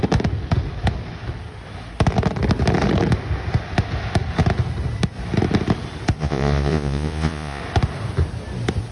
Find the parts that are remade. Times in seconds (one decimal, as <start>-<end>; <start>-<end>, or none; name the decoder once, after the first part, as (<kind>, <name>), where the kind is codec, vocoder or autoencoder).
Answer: 6.2-7.6 (vocoder, Vocos)